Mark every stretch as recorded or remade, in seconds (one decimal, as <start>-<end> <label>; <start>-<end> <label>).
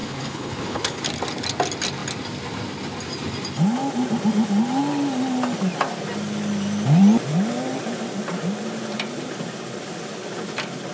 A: 0.0-1.0 remade; 1.0-10.9 recorded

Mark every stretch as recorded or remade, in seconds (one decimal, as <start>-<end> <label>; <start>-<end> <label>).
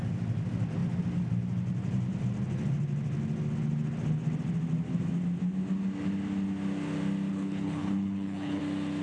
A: 0.0-7.3 recorded; 7.3-8.6 remade; 8.6-9.0 recorded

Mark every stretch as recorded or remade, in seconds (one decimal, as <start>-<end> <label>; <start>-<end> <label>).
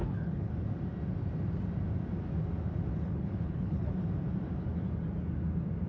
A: 0.0-0.5 remade; 0.5-2.9 recorded; 2.9-3.9 remade; 3.9-5.9 recorded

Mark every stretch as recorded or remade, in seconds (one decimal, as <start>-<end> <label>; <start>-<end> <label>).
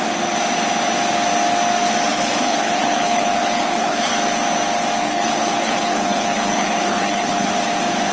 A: 0.0-2.1 recorded; 2.1-4.1 remade; 4.1-5.0 recorded; 5.0-7.5 remade; 7.5-8.1 recorded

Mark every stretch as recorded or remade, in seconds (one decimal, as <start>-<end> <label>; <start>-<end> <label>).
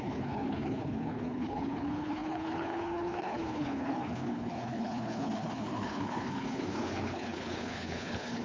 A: 0.0-8.4 remade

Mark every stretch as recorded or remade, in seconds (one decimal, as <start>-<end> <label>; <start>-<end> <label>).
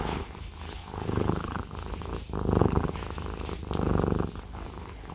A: 0.0-2.1 remade; 2.1-2.6 recorded; 2.6-3.0 remade; 3.0-4.4 recorded; 4.4-5.1 remade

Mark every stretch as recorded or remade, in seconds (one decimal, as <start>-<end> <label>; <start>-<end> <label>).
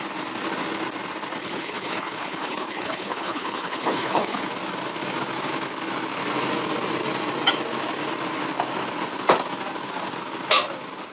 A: 0.0-1.4 recorded; 1.4-4.4 remade; 4.4-11.1 recorded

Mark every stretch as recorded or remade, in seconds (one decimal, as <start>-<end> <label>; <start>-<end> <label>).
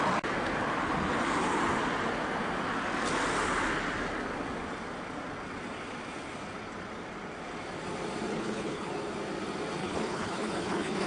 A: 0.0-8.3 recorded; 8.3-8.9 remade; 8.9-9.8 recorded; 9.8-11.1 remade